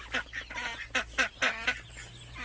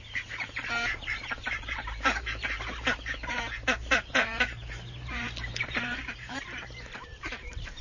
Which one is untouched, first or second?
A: first